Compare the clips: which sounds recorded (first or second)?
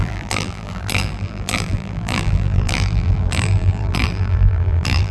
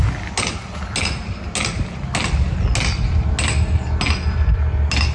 second